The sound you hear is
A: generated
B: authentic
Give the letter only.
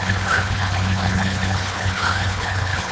A